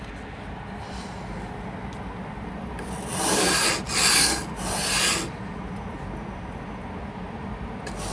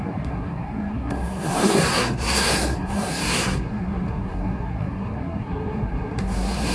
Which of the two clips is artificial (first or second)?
second